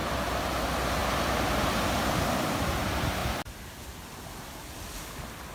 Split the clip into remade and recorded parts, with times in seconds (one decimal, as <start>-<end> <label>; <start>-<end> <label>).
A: 0.0-0.5 remade; 0.5-1.0 recorded; 1.0-2.6 remade; 2.6-5.5 recorded